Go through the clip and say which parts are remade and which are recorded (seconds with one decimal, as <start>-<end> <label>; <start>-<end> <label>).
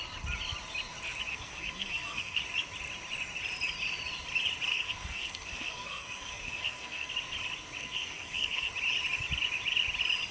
0.0-1.3 recorded; 1.3-2.4 remade; 2.4-4.7 recorded; 4.7-7.1 remade; 7.1-7.8 recorded; 7.8-8.7 remade; 8.7-10.3 recorded